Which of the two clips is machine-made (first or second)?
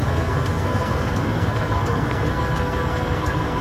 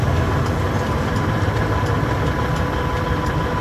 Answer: first